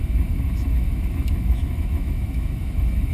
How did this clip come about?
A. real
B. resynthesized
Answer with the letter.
B